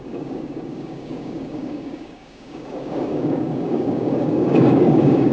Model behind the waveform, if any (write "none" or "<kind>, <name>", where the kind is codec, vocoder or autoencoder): codec, DAC